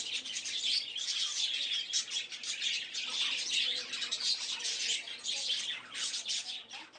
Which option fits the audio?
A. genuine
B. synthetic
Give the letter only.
A